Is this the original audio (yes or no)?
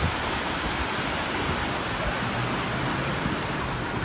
yes